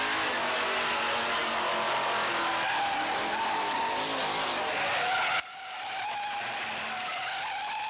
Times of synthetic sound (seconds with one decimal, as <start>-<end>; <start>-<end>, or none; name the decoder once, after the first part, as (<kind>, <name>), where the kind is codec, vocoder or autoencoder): none